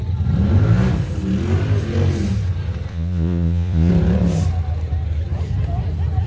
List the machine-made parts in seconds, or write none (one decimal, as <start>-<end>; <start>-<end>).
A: 2.9-3.9